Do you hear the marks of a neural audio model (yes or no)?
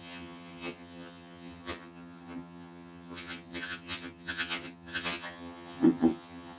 yes